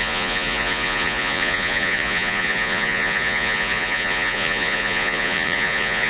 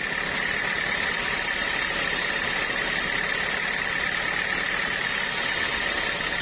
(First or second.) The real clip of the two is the second